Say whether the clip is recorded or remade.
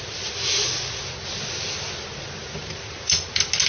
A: recorded